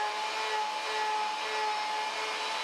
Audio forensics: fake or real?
real